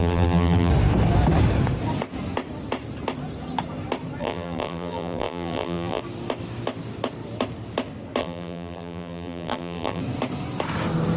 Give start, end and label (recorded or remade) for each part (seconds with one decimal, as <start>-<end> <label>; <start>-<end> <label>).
0.0-0.7 remade; 0.7-4.2 recorded; 4.2-6.0 remade; 6.0-8.2 recorded; 8.2-10.0 remade; 10.0-11.2 recorded